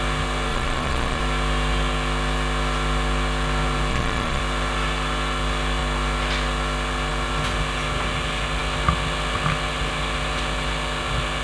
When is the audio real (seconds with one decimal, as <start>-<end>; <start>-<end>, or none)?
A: 0.0-0.5; 1.2-3.9; 4.4-11.4